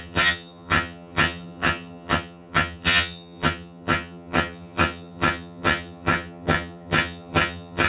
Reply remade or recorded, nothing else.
remade